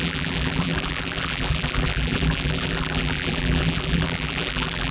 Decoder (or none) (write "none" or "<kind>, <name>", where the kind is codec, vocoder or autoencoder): vocoder, BigVGAN v2